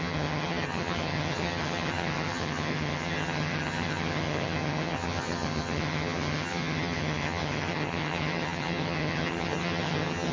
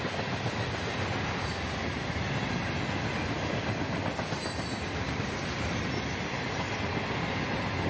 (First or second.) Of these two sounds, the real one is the second